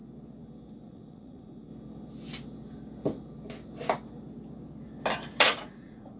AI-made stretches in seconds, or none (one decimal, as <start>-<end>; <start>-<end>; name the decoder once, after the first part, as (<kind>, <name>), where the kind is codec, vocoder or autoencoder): 0.7-1.7 (vocoder, Vocos); 5.4-6.2